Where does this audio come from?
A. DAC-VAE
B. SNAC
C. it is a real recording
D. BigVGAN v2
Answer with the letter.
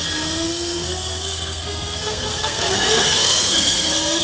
B